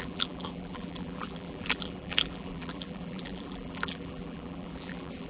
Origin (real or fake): fake